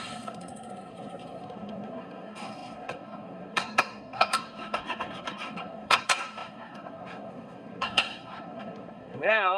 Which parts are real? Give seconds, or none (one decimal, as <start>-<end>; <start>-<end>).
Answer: none